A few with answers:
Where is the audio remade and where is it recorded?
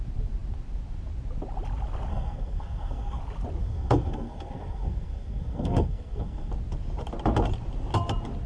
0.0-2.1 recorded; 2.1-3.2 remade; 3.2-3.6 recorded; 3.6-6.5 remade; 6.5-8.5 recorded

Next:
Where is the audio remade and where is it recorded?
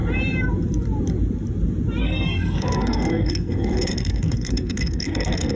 0.0-2.0 recorded; 2.0-5.6 remade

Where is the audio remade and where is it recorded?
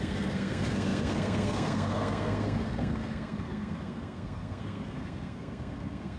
0.0-6.2 remade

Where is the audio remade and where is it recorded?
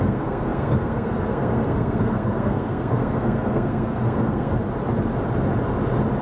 0.0-4.6 remade; 4.6-6.2 recorded